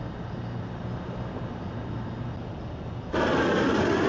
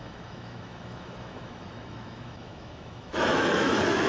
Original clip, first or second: first